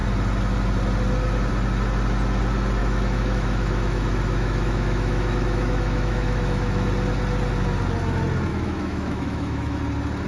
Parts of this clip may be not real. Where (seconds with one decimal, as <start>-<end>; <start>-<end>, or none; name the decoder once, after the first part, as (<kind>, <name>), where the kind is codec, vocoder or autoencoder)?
2.8-6.9 (autoencoder, DAC-VAE); 8.5-9.8